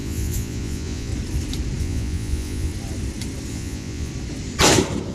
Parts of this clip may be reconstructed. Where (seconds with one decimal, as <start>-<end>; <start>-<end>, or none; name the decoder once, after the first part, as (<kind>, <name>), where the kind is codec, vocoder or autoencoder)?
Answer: 0.0-1.1 (vocoder, Vocos); 1.8-2.7; 3.5-4.1